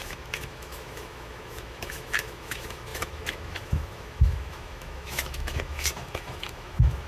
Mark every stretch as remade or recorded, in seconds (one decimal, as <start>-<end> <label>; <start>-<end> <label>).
0.0-7.1 remade